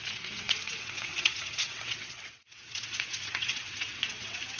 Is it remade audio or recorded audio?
remade